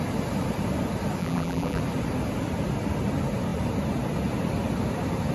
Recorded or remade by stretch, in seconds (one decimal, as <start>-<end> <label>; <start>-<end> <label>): 0.0-1.2 recorded; 1.2-1.8 remade; 1.8-5.3 recorded